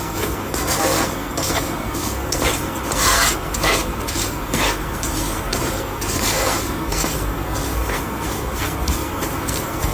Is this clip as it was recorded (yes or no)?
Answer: no